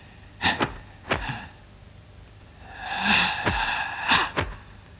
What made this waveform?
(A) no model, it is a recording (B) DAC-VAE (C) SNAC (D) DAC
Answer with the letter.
A